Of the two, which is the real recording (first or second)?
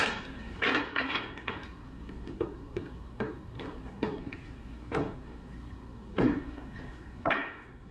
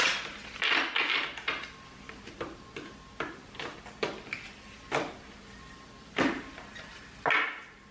second